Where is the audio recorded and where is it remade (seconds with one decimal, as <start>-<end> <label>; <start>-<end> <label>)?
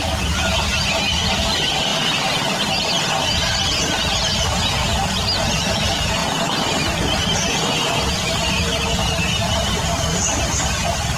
0.0-11.2 recorded